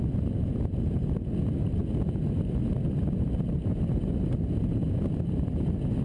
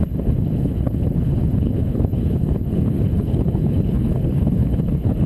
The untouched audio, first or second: first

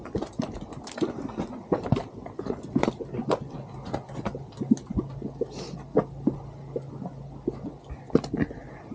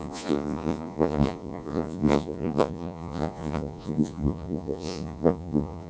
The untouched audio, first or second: first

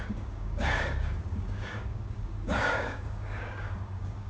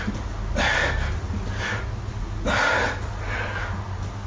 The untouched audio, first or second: second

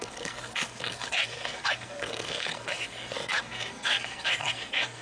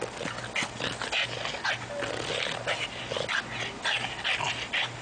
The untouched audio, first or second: second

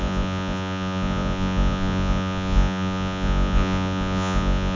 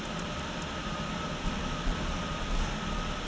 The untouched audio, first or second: second